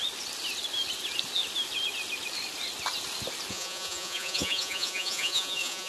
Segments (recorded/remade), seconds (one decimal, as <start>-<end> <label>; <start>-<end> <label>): 0.0-3.5 recorded; 3.5-5.9 remade